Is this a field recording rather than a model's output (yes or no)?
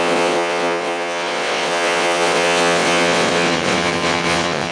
no